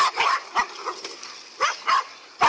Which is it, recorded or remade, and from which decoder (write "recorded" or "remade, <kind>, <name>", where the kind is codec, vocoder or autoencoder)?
recorded